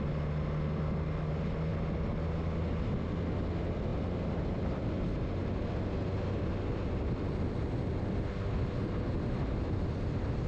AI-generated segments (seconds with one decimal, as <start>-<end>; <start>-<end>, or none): none